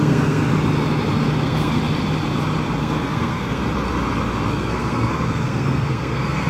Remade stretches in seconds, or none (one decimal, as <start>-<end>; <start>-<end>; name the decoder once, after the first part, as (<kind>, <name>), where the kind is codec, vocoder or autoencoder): 0.0-0.4 (codec, SNAC); 1.4-1.8; 2.8-3.6; 4.5-6.5